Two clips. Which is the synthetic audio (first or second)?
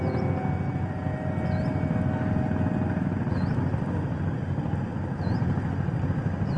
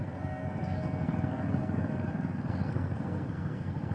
second